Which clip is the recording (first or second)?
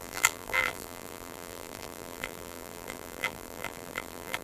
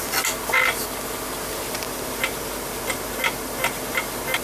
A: second